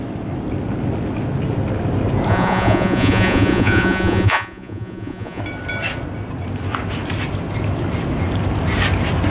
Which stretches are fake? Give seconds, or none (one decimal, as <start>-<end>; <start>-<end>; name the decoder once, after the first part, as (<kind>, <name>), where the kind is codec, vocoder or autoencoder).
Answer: 2.3-5.4 (vocoder, Vocos)